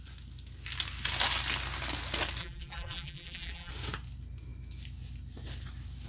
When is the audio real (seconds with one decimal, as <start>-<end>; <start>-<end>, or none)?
0.0-2.4; 3.7-6.1